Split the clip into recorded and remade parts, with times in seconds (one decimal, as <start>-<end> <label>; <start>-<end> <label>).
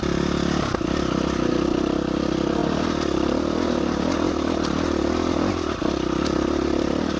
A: 0.0-7.2 recorded